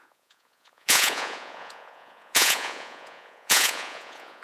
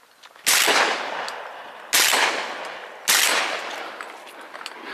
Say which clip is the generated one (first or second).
first